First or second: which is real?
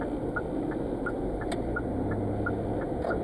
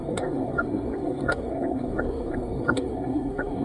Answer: first